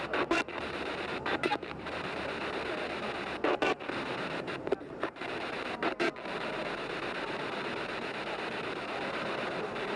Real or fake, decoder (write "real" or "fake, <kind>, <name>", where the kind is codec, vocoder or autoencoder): fake, vocoder, BigVGAN v2